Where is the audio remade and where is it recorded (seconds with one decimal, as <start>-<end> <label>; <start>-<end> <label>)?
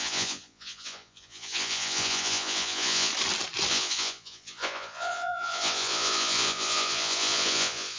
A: 0.0-3.1 remade; 3.1-3.7 recorded; 3.7-8.0 remade